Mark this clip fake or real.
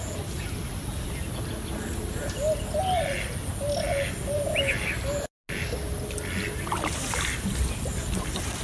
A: real